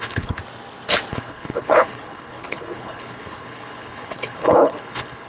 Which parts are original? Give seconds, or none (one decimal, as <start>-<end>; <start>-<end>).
0.4-1.1